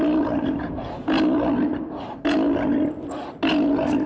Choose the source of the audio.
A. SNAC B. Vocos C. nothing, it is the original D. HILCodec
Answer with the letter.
C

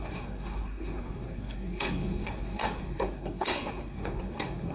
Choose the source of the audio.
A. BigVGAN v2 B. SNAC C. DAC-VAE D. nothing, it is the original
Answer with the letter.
B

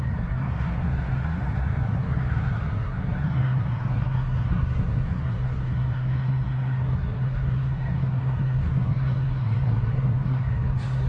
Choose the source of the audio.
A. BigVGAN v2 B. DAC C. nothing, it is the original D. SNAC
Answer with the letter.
D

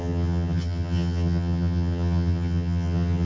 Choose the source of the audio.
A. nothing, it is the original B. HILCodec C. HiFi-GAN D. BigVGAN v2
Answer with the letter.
C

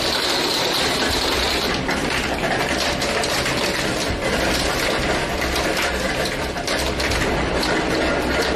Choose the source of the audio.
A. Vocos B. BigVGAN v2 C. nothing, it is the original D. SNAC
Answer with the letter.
B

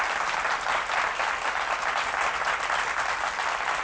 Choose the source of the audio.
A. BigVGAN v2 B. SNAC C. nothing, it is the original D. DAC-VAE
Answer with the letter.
C